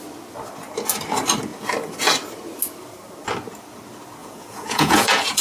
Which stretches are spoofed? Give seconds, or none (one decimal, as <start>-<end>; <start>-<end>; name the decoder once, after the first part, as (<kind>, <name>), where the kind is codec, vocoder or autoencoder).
4.2-5.4 (vocoder, Vocos)

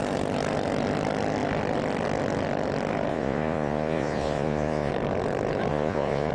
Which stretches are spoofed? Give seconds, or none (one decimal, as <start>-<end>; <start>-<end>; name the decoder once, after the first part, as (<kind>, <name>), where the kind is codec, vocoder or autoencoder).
3.1-4.9 (vocoder, Vocos); 5.7-6.3

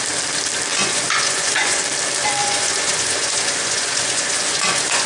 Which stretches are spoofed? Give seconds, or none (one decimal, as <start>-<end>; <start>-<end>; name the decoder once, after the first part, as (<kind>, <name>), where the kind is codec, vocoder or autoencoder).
0.7-1.8 (vocoder, Vocos); 2.4-5.1

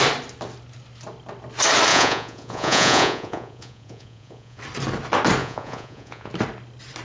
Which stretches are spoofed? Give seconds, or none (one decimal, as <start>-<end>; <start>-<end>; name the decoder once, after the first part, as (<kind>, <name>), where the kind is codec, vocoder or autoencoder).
1.9-4.6 (vocoder, Vocos); 5.4-6.3

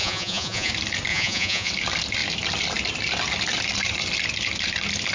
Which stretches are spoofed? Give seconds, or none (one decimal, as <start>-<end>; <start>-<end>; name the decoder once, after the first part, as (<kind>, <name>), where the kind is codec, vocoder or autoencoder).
0.0-0.7 (vocoder, Vocos); 1.1-1.7

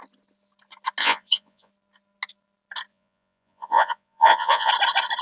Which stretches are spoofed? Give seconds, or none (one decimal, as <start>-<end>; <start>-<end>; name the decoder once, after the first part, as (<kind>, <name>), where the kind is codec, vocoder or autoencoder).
1.0-1.7 (vocoder, Vocos); 2.9-4.7

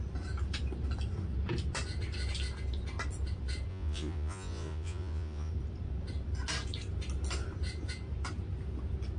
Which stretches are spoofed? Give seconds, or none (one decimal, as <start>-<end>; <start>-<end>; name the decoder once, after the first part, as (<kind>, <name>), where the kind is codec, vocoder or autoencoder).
3.7-5.5 (vocoder, Vocos)